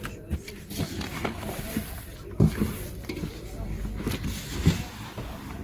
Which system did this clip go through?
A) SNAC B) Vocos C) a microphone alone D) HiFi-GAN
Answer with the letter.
C